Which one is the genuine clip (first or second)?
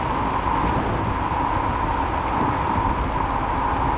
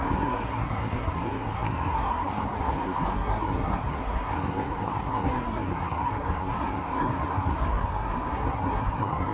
first